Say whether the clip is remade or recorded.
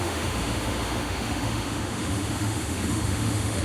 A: remade